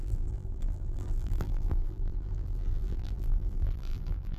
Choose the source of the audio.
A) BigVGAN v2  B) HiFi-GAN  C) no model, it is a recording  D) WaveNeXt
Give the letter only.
A